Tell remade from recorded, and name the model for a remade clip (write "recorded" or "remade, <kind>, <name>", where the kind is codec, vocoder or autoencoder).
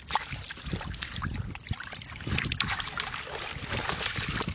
recorded